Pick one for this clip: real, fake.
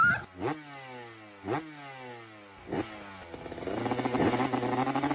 real